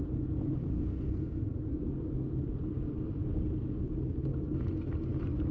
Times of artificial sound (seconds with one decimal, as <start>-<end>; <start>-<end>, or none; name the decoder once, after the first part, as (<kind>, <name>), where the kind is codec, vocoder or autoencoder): 0.6-1.9 (codec, SNAC)